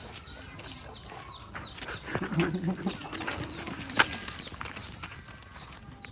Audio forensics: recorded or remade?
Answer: recorded